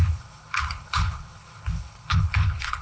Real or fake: fake